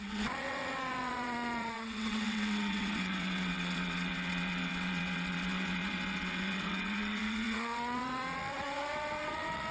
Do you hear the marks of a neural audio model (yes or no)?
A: yes